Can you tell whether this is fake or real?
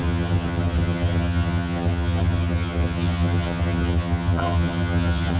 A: fake